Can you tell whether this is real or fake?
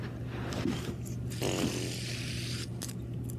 real